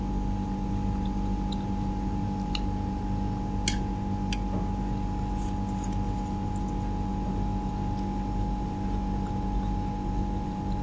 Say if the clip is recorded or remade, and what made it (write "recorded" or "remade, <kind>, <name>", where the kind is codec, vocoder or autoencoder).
recorded